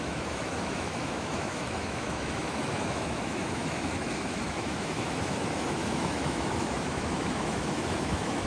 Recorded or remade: remade